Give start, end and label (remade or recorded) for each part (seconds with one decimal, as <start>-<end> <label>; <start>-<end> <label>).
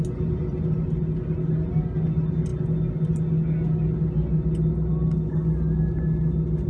0.0-6.7 recorded